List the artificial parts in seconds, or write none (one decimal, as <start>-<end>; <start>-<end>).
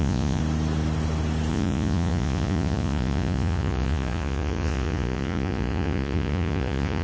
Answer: 0.0-0.4; 1.5-7.0